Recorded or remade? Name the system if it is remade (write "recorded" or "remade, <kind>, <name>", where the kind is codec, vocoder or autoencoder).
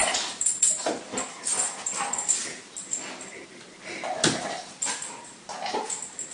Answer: recorded